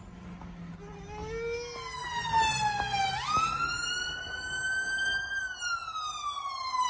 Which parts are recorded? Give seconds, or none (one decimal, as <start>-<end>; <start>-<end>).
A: 0.0-6.9